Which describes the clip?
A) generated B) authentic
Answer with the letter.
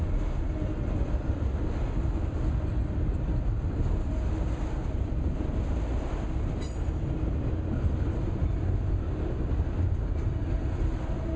B